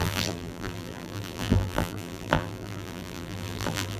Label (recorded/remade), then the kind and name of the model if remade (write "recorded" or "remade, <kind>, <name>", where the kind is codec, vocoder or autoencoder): remade, vocoder, BigVGAN v2